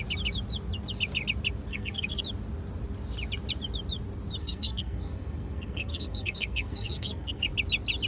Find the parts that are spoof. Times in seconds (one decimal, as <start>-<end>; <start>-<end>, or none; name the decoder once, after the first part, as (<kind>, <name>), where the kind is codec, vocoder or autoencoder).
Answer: 1.7-2.2 (codec, SNAC); 4.4-7.5